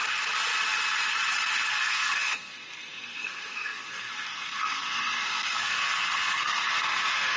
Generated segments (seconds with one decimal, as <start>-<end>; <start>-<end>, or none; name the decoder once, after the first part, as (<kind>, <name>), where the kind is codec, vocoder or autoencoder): 1.7-7.4 (codec, SNAC)